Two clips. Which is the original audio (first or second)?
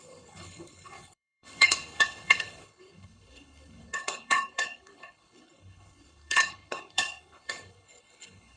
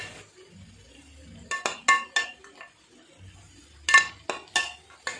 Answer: second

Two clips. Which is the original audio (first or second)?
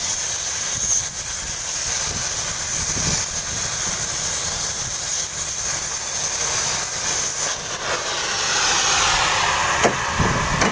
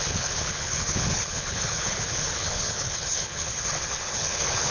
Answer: first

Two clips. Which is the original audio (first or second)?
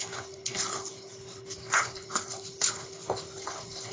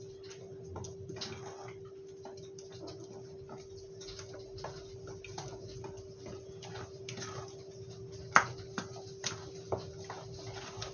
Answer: second